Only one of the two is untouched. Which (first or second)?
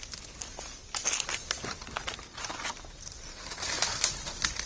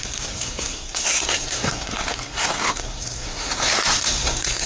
first